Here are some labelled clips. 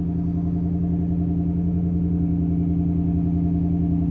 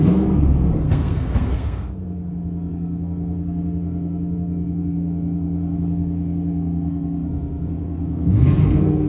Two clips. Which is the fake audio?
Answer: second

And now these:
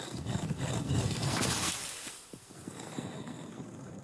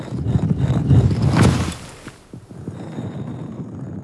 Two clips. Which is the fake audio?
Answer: first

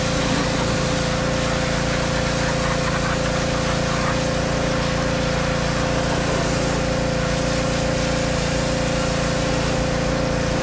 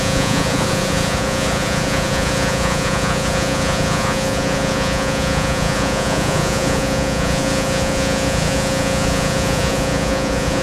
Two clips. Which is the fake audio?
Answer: second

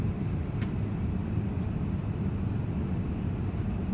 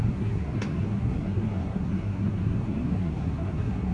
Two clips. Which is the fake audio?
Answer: second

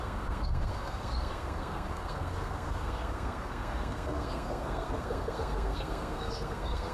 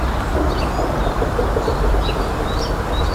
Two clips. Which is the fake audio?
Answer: first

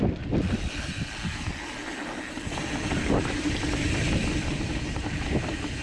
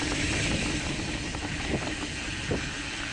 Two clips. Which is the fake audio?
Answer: first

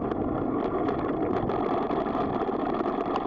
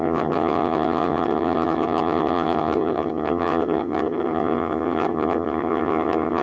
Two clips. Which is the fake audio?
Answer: second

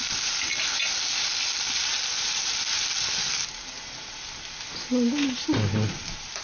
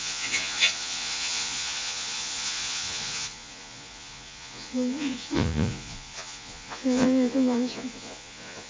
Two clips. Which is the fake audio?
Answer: second